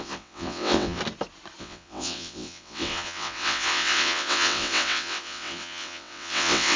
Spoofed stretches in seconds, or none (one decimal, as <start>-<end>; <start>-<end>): 0.0-1.0; 1.6-6.8